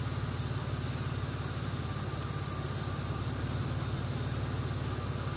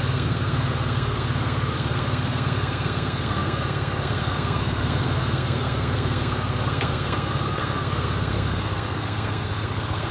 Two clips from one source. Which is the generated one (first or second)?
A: second